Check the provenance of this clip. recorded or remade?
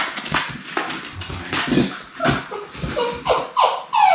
recorded